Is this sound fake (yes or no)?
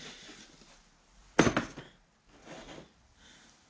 no